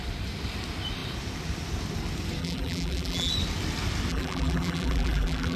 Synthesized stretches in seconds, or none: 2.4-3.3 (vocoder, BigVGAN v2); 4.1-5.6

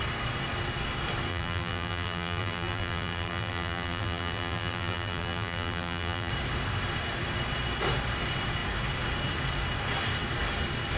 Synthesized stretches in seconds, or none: 1.3-6.3 (vocoder, BigVGAN v2)

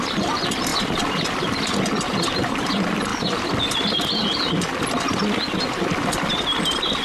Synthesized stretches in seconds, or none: 0.7-1.8 (vocoder, BigVGAN v2); 3.1-3.7